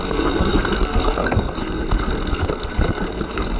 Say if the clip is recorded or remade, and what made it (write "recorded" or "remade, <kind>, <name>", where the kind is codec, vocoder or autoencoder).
remade, codec, SNAC